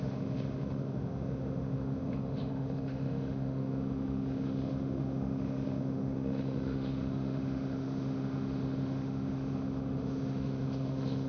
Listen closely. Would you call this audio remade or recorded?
remade